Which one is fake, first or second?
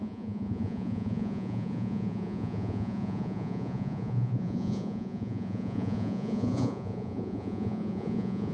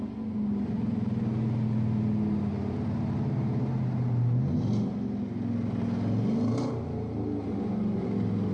first